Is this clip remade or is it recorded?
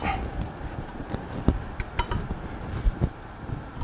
recorded